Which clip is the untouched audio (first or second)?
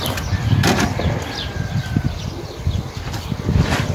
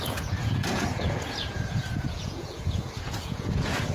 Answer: first